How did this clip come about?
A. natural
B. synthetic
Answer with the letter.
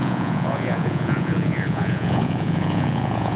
B